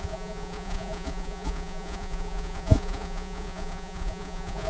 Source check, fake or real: fake